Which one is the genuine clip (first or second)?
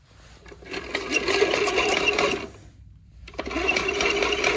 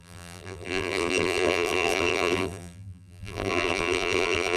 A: first